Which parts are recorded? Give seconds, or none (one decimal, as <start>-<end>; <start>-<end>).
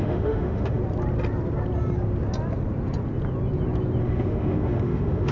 0.8-4.0